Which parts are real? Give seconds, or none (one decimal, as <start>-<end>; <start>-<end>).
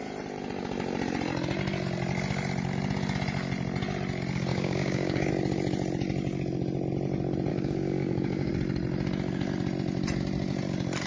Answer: 0.0-4.5; 5.3-7.5; 8.5-11.1